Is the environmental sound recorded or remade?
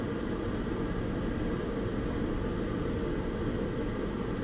recorded